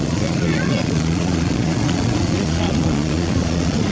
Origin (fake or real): fake